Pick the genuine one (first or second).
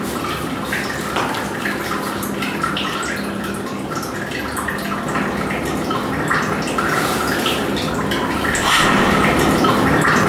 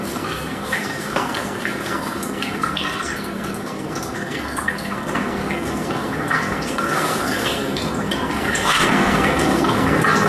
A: first